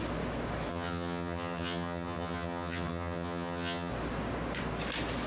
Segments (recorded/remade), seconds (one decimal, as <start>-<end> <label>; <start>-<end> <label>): 0.0-0.7 recorded; 0.7-3.9 remade; 3.9-5.3 recorded